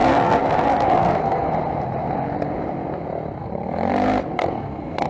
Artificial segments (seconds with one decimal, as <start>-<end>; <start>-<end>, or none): 0.0-1.5; 3.4-5.1